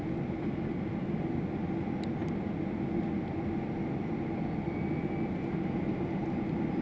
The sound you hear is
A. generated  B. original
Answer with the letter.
B